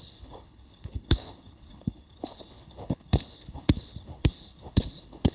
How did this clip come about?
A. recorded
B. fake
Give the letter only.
B